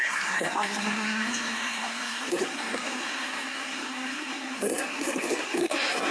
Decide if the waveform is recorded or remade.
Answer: remade